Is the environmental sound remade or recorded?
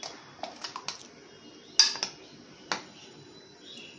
recorded